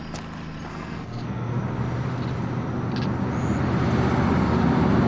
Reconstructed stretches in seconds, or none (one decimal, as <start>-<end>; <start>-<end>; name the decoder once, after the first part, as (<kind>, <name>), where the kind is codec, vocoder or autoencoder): 0.7-1.6 (codec, SNAC)